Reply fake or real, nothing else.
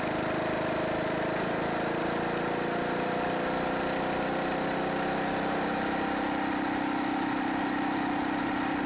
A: real